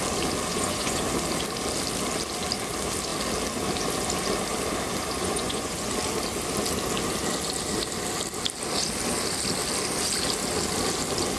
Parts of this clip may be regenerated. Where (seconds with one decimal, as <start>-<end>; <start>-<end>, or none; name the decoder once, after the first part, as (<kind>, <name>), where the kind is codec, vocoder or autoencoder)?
0.5-1.0 (vocoder, Vocos); 5.2-5.9